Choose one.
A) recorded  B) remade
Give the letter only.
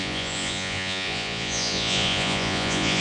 B